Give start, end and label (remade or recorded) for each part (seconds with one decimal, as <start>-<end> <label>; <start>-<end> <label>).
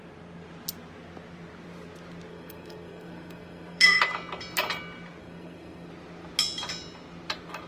0.0-2.3 recorded; 2.3-4.0 remade; 4.0-5.2 recorded; 5.2-5.9 remade; 5.9-7.7 recorded